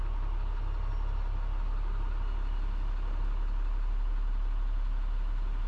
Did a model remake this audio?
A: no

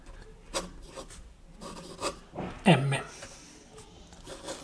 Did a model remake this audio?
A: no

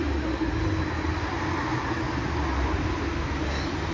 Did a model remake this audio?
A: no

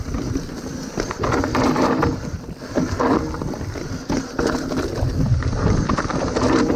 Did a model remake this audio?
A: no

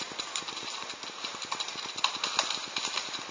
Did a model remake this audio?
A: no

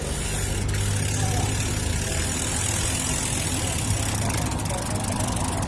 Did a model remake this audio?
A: no